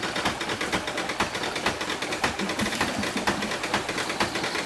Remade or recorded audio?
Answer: recorded